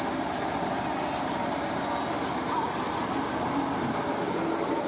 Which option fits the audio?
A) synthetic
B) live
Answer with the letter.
B